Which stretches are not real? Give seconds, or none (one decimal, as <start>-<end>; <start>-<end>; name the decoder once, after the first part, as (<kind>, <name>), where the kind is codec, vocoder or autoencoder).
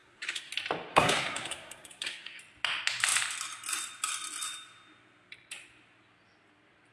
0.0-0.5 (codec, SNAC); 0.9-2.4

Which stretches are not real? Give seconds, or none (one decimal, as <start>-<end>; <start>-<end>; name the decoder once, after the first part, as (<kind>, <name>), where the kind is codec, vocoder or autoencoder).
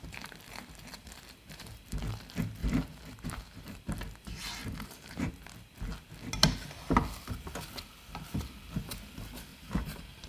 1.0-2.0 (vocoder, BigVGAN v2); 2.6-3.8; 4.6-5.3; 9.5-10.3